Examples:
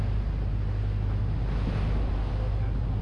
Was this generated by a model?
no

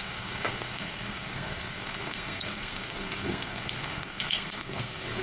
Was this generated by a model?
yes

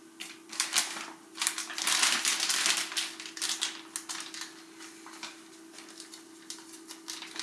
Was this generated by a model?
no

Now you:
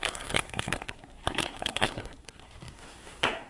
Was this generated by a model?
yes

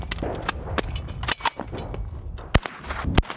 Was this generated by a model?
no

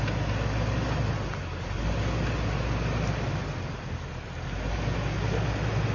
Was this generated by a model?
no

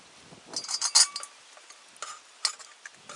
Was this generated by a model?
no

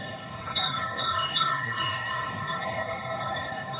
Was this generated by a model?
yes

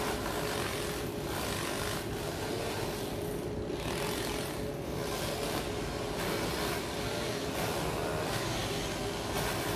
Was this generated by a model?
no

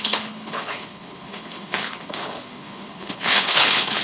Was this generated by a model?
yes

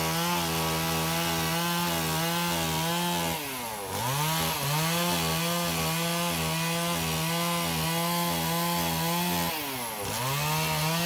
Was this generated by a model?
no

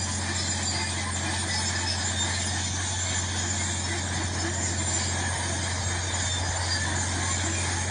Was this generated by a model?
no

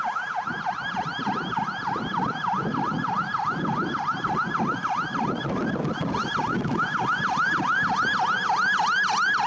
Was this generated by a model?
no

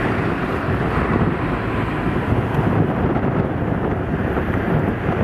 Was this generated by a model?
no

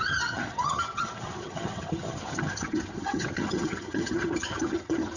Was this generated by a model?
yes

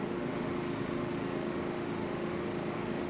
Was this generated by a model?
yes